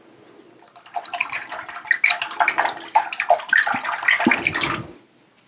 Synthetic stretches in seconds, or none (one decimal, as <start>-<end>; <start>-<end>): none

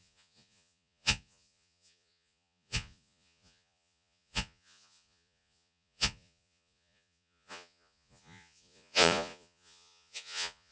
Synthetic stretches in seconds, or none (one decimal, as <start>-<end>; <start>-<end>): 0.0-10.7

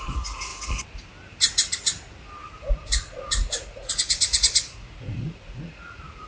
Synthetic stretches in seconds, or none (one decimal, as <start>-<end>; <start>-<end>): 0.0-0.5; 2.7-6.3

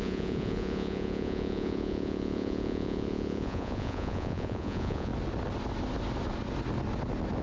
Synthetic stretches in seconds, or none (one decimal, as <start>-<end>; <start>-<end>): 0.0-5.1

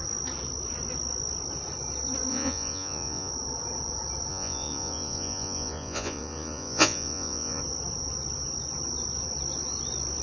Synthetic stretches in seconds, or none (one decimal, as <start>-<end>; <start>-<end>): 2.3-3.3; 4.3-7.6

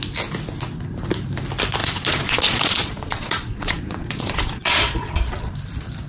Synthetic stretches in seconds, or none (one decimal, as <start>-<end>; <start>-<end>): 1.8-5.5

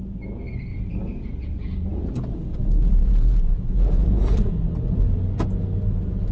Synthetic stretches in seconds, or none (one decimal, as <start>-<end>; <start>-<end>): 0.7-4.5

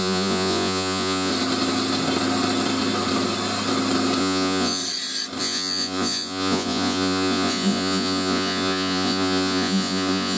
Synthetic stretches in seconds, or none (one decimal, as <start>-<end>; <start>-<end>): 0.0-1.3; 4.2-4.8; 5.4-10.4